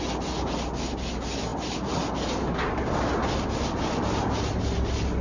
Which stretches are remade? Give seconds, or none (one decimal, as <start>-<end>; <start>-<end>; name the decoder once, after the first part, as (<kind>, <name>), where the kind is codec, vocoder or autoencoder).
none